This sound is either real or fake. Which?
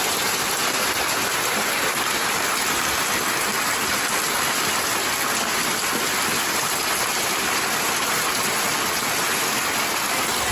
real